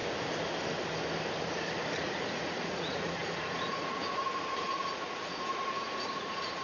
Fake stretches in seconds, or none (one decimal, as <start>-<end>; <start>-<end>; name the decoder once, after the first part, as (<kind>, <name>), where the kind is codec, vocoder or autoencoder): 2.0-6.6 (vocoder, Vocos)